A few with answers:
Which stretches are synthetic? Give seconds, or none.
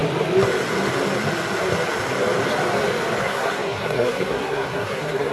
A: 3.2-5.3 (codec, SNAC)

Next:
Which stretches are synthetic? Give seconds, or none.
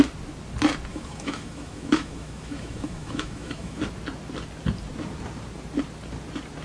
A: 0.9-3.8 (autoencoder, DAC-VAE)